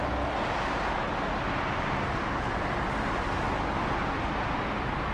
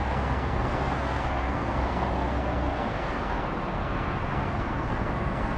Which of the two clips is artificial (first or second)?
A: second